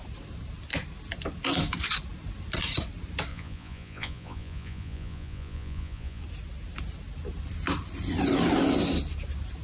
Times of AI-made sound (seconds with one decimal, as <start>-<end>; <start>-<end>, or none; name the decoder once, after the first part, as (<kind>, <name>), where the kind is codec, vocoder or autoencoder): 3.3-6.2 (vocoder, Vocos)